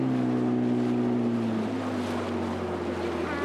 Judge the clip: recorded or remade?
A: recorded